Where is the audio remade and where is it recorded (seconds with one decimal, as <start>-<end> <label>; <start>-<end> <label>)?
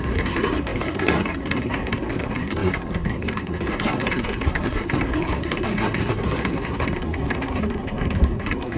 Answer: 0.0-8.8 remade